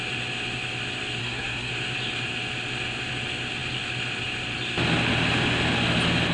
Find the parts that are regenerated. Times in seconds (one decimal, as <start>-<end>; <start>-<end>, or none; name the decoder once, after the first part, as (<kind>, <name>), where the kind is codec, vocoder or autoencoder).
1.2-1.7 (codec, SNAC)